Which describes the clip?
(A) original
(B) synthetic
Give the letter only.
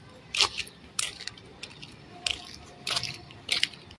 A